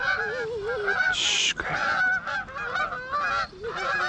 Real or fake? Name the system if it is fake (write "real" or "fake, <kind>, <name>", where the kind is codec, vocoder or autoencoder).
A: real